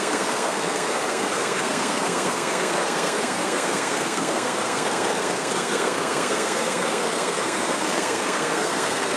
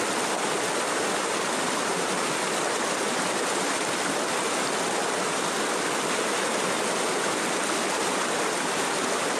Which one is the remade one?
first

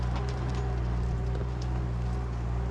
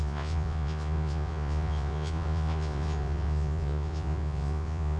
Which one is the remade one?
second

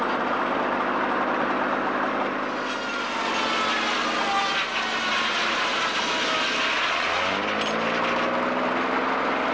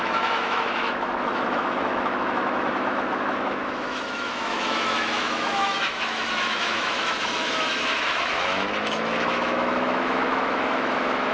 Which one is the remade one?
second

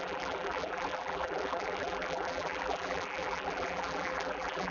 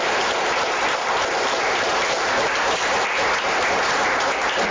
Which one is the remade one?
first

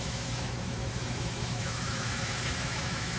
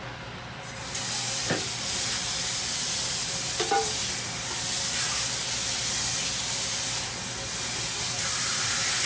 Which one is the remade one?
first